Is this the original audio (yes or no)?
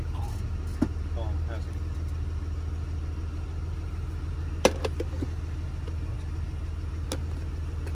yes